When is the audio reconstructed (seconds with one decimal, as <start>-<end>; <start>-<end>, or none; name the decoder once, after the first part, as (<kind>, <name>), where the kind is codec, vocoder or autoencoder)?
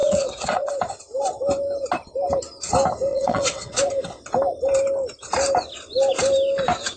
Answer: 0.0-0.7 (vocoder, WaveNeXt); 3.1-3.9